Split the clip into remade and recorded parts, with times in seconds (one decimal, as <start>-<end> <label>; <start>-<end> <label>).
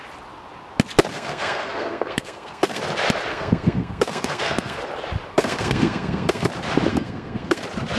0.0-1.1 recorded; 1.1-2.8 remade; 2.8-3.3 recorded; 3.3-4.8 remade; 4.8-5.3 recorded; 5.3-6.5 remade; 6.5-6.9 recorded; 6.9-7.6 remade; 7.6-8.0 recorded